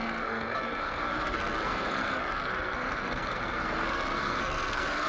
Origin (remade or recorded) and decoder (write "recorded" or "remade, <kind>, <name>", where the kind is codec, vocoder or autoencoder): remade, codec, SNAC